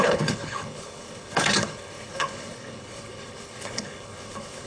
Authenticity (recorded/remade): remade